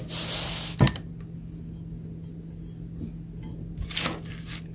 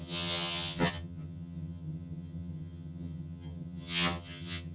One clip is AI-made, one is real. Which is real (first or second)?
first